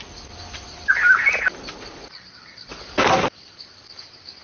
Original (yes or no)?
yes